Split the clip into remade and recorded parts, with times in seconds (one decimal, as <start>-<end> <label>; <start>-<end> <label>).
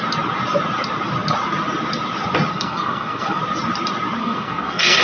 0.0-2.5 recorded; 2.5-3.4 remade; 3.4-4.2 recorded; 4.2-5.0 remade